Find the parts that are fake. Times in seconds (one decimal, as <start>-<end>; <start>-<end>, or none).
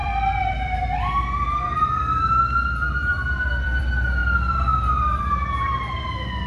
0.0-2.2; 2.8-3.8; 4.2-5.2